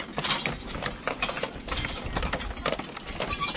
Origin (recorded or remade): recorded